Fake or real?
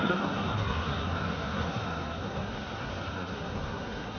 fake